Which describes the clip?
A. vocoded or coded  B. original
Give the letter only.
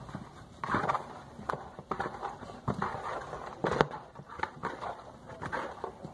A